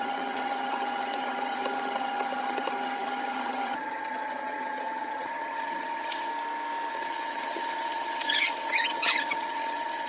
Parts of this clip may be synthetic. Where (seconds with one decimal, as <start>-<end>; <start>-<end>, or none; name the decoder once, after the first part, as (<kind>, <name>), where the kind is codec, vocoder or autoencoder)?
0.0-6.3 (vocoder, HiFi-GAN); 6.9-10.1